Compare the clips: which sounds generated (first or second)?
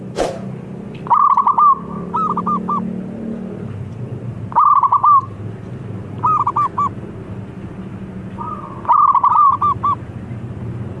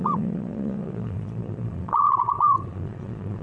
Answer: second